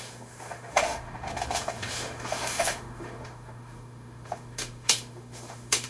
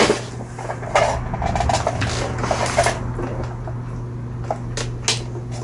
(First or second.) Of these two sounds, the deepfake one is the first